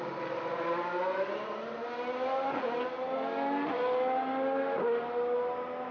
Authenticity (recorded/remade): recorded